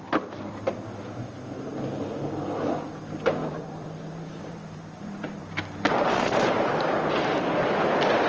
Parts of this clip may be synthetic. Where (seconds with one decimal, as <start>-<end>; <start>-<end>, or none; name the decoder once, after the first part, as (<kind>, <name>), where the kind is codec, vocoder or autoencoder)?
3.4-6.7 (vocoder, BigVGAN v2)